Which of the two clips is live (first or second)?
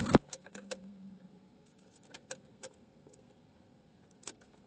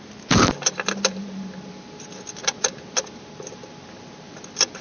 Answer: second